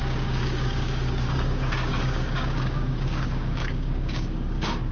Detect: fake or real fake